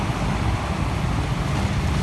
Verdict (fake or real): real